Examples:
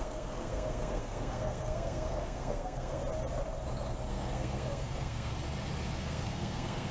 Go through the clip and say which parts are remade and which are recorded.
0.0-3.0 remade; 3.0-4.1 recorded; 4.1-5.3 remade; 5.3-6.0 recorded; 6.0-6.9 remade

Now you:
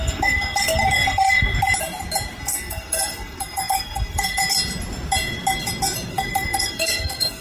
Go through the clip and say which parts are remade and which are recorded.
0.0-1.5 remade; 1.5-2.4 recorded; 2.4-4.4 remade; 4.4-6.1 recorded; 6.1-7.4 remade

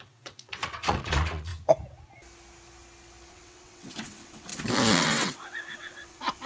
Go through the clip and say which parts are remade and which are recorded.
0.0-1.5 remade; 1.5-3.3 recorded; 3.3-4.5 remade; 4.5-5.0 recorded; 5.0-6.5 remade

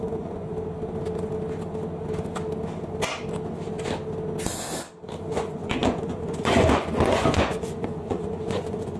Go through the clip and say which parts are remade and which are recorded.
0.0-0.5 remade; 0.5-5.3 recorded; 5.3-9.0 remade

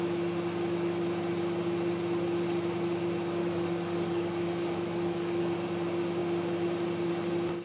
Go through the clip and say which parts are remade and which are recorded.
0.0-3.4 recorded; 3.4-5.5 remade; 5.5-7.6 recorded

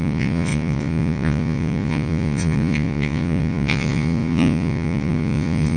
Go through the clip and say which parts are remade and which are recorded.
0.0-5.8 remade